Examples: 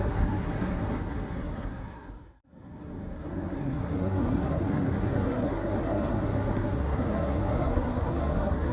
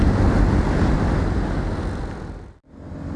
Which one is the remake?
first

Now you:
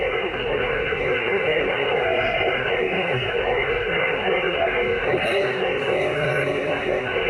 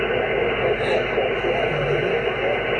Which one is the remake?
first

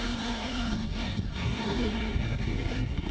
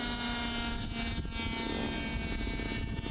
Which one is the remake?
first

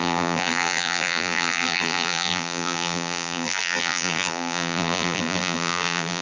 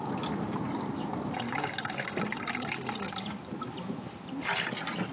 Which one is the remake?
first